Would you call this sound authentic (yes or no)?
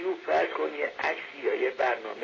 yes